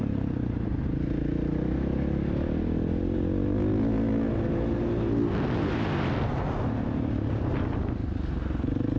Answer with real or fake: real